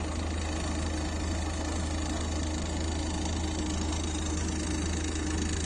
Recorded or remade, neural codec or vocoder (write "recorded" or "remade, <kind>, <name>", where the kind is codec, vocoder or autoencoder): recorded